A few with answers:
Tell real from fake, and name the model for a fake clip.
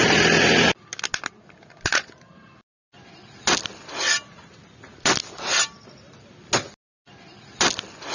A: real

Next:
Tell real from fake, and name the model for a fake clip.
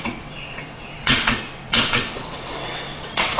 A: fake, vocoder, WaveNeXt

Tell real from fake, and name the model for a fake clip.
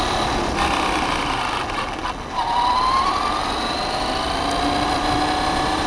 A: real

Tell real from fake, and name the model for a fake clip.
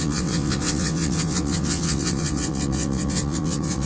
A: fake, vocoder, WaveNeXt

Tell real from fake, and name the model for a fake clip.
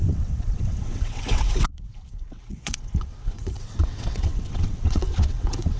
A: fake, vocoder, WaveNeXt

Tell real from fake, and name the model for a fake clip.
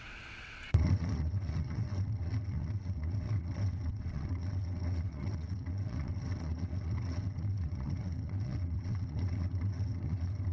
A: fake, vocoder, WaveNeXt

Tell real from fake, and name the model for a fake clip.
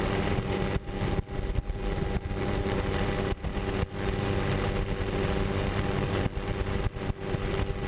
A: real